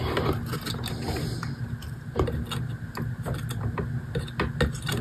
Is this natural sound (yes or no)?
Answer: yes